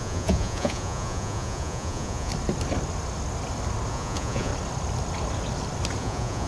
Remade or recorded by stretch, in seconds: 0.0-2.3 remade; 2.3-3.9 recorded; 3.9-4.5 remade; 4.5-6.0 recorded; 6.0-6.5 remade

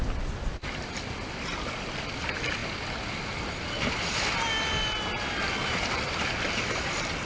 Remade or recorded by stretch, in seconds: 0.0-7.3 recorded

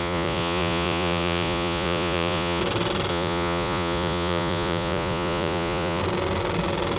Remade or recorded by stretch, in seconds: 0.0-2.6 remade; 2.6-3.1 recorded; 3.1-6.0 remade; 6.0-7.0 recorded

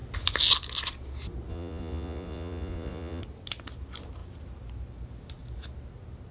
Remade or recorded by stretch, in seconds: 0.0-1.5 recorded; 1.5-3.2 remade; 3.2-6.3 recorded